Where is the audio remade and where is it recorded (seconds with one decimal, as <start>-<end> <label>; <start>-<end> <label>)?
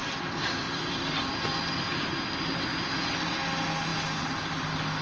0.0-2.1 remade; 2.1-5.0 recorded